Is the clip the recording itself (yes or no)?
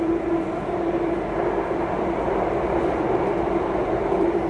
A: no